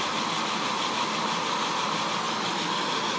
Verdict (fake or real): real